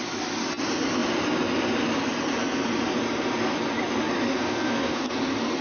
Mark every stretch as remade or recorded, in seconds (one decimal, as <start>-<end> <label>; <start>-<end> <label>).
0.0-4.3 recorded; 4.3-5.1 remade; 5.1-5.6 recorded